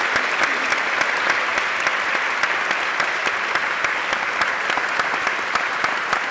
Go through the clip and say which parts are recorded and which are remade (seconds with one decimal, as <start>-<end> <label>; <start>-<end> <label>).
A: 0.0-6.3 recorded